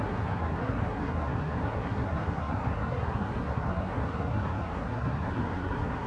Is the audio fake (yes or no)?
yes